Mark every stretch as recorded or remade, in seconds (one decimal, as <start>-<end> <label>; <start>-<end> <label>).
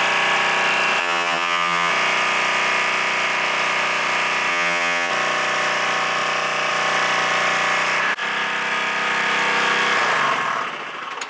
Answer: 0.0-1.0 recorded; 1.0-1.9 remade; 1.9-4.5 recorded; 4.5-5.1 remade; 5.1-11.3 recorded